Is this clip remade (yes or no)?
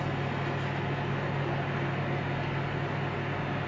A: no